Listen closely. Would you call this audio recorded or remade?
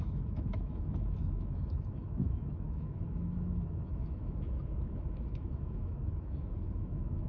remade